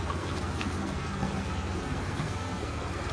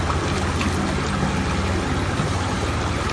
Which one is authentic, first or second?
second